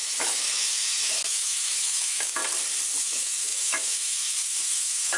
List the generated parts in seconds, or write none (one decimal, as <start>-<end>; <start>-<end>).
0.0-2.4; 3.0-5.2